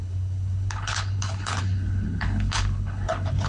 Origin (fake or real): fake